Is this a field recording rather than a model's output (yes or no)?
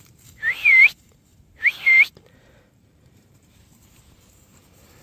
no